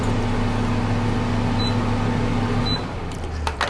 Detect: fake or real real